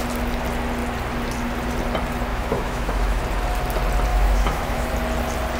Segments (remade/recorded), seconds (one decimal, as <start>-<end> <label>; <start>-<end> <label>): 0.0-2.3 recorded; 2.3-3.2 remade; 3.2-4.1 recorded; 4.1-4.9 remade; 4.9-5.6 recorded